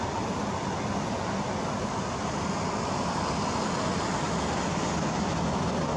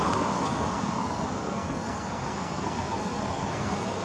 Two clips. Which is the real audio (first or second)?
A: first